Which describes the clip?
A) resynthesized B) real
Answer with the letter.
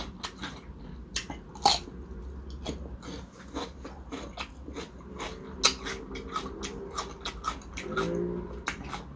B